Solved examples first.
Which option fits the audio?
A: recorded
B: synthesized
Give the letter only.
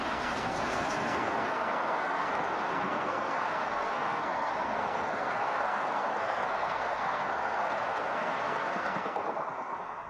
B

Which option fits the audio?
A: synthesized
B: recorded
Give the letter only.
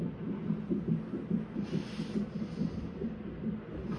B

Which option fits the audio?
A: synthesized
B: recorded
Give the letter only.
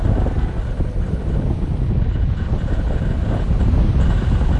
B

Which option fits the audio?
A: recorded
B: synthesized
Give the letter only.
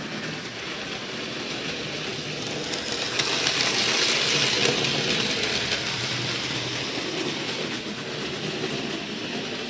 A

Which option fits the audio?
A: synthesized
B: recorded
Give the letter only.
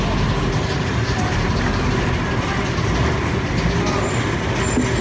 B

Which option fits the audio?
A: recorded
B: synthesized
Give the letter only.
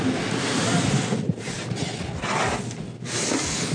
A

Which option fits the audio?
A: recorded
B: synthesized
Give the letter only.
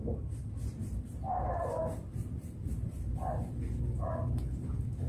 A